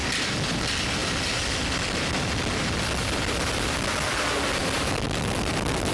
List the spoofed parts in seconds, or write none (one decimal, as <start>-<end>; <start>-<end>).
none